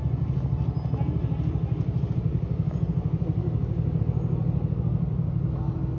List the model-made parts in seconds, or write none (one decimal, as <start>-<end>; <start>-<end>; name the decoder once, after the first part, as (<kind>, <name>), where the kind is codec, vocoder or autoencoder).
2.3-2.9 (codec, DAC); 3.4-4.0